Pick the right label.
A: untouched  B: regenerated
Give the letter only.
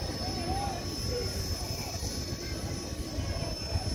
A